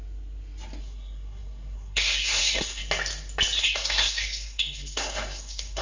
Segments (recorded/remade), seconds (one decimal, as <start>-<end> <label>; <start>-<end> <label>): 0.0-0.8 recorded; 0.8-2.8 remade; 2.8-3.6 recorded; 3.6-5.8 remade